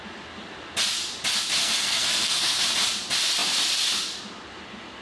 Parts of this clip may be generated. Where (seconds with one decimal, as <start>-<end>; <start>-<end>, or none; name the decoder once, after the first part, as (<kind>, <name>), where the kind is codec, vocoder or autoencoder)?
1.6-2.6 (codec, SNAC)